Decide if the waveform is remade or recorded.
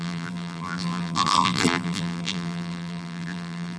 remade